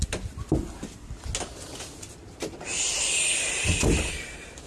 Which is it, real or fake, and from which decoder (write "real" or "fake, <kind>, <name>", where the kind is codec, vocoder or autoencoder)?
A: real